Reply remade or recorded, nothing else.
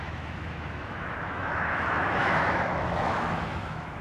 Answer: remade